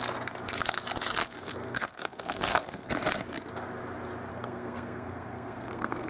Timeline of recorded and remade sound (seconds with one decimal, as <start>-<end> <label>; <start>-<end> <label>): 0.0-1.2 recorded; 1.2-2.9 remade; 2.9-4.3 recorded; 4.3-6.1 remade